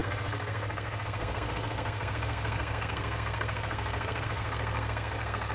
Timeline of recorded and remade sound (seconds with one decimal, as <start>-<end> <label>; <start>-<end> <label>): 0.0-5.5 remade